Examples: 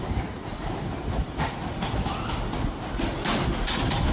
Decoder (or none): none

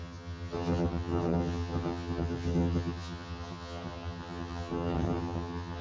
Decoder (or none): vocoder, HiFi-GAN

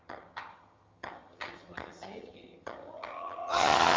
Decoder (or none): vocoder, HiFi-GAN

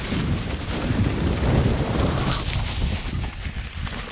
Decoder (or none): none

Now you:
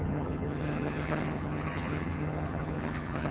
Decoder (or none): vocoder, HiFi-GAN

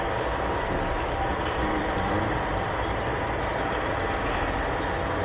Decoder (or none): none